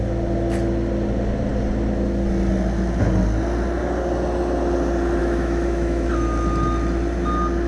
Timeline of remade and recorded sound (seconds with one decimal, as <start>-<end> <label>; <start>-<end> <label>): 0.0-5.2 recorded; 5.2-6.1 remade; 6.1-7.7 recorded

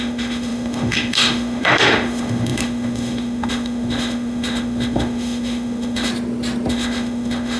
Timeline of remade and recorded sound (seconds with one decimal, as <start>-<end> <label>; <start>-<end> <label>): 0.0-6.1 remade; 6.1-6.7 recorded; 6.7-7.6 remade

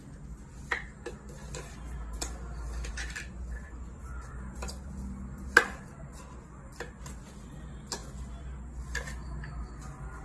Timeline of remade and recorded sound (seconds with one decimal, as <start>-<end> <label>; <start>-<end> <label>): 0.0-10.2 recorded

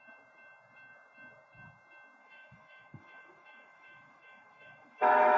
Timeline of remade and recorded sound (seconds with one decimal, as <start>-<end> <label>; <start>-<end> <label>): 0.0-2.2 recorded; 2.2-5.4 remade

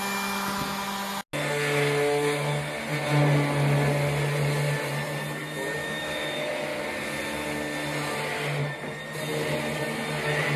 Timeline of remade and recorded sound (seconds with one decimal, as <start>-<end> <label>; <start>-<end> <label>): 0.0-5.8 recorded; 5.8-6.5 remade; 6.5-10.6 recorded

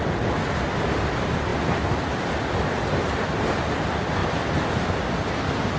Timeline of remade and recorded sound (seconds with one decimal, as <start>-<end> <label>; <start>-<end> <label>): 0.0-5.8 recorded

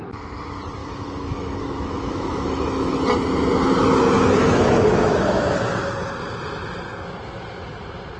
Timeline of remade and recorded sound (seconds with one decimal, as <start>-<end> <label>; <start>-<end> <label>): 0.0-0.8 recorded; 0.8-2.9 remade; 2.9-4.4 recorded; 4.4-5.7 remade; 5.7-8.2 recorded

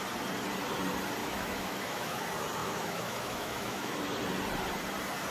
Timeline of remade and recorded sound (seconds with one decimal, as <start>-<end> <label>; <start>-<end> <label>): 0.0-1.2 recorded; 1.2-2.2 remade; 2.2-2.6 recorded; 2.6-4.0 remade; 4.0-5.3 recorded